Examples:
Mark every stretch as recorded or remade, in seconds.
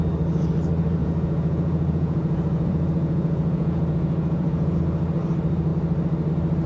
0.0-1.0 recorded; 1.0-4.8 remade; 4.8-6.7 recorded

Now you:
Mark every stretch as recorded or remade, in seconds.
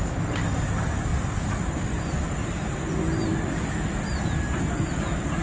0.0-5.4 recorded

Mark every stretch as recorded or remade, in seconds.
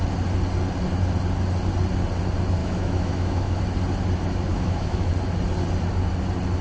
0.0-2.6 recorded; 2.6-3.6 remade; 3.6-4.5 recorded; 4.5-5.1 remade; 5.1-6.6 recorded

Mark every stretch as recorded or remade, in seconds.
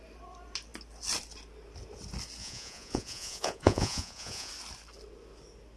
0.0-2.4 recorded; 2.4-4.5 remade; 4.5-5.8 recorded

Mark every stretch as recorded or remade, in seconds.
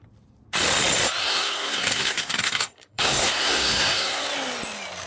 0.0-1.2 recorded; 1.2-4.3 remade; 4.3-5.1 recorded